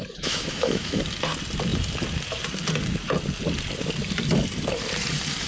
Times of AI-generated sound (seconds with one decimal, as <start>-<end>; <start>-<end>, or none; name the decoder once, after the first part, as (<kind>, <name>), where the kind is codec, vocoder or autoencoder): 0.0-1.0 (autoencoder, DAC-VAE)